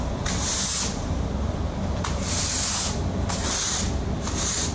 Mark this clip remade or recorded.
recorded